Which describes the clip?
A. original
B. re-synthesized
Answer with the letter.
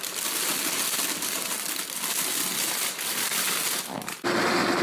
A